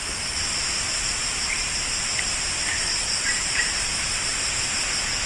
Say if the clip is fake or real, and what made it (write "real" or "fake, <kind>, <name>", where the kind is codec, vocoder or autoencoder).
fake, vocoder, BigVGAN v2